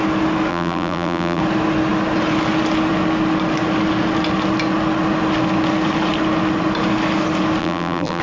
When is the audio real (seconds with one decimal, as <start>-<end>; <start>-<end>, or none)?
0.0-0.5; 1.4-7.6